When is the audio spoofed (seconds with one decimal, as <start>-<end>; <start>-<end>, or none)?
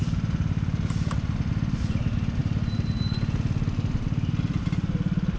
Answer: none